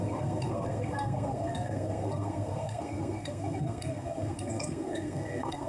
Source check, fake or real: fake